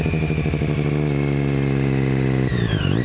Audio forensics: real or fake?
real